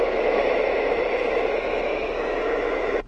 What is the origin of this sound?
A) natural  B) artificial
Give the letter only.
B